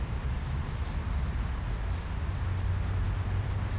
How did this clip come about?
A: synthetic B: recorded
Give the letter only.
B